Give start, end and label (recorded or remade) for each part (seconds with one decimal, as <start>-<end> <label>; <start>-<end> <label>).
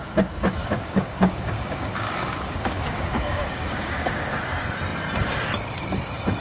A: 0.0-0.6 recorded; 0.6-4.4 remade; 4.4-6.4 recorded